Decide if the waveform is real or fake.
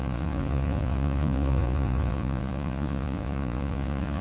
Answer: fake